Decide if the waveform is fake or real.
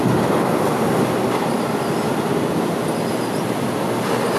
real